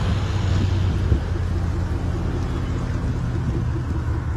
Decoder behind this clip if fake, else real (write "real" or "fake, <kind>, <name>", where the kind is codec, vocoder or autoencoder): real